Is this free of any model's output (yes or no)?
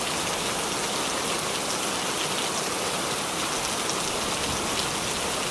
yes